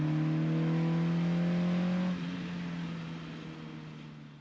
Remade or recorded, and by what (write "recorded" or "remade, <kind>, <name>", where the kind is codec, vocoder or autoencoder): recorded